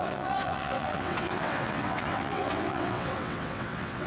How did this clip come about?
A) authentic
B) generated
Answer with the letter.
B